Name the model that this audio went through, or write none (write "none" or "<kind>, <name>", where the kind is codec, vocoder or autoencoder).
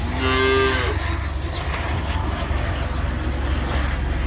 none